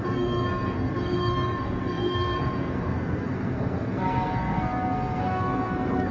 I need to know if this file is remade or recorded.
remade